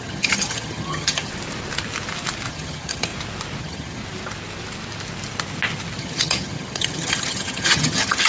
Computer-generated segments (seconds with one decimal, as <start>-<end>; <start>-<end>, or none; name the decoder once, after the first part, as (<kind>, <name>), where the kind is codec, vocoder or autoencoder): 0.0-1.3 (vocoder, HiFi-GAN); 2.5-3.1; 3.6-4.0; 6.0-8.3